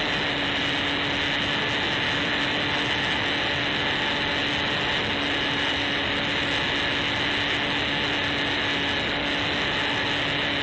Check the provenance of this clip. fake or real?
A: real